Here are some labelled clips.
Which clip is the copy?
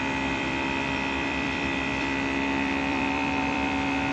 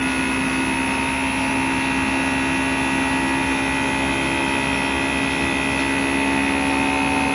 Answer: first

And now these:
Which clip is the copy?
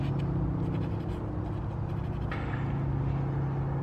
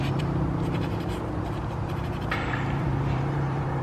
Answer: second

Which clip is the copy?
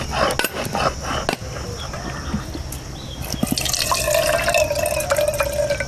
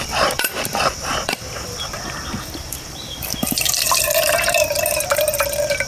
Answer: second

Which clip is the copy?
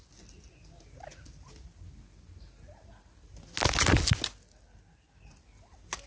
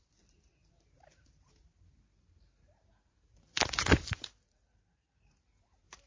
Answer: second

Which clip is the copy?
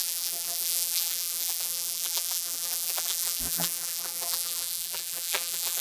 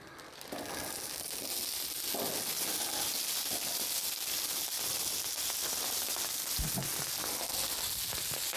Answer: first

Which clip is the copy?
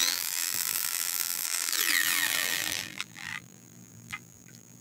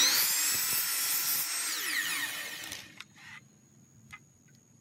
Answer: first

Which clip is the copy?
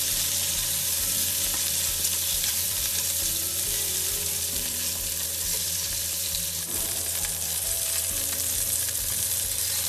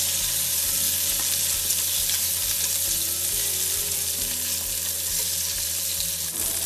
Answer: first